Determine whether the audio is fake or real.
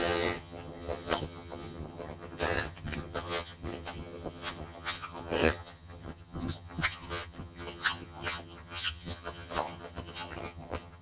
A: fake